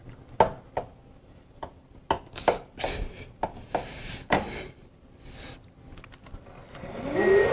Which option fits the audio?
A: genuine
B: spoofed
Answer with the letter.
A